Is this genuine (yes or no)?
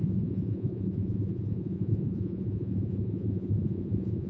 no